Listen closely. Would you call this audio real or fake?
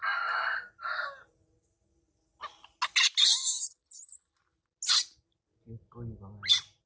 real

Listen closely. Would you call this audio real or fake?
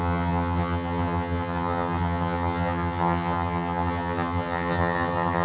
fake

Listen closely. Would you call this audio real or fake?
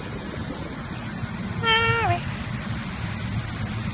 real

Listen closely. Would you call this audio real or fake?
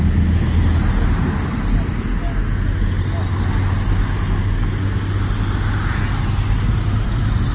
real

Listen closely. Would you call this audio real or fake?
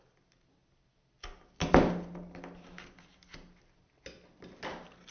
real